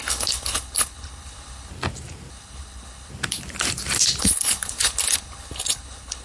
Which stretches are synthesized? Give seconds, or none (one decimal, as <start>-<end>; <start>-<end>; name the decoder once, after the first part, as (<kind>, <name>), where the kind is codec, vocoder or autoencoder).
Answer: 0.0-1.7 (codec, HILCodec); 2.3-3.1; 4.2-6.2